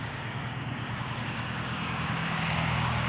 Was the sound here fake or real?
fake